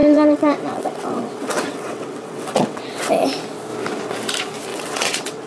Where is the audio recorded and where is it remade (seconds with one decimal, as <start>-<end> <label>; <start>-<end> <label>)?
0.0-3.1 remade; 3.1-4.7 recorded; 4.7-5.5 remade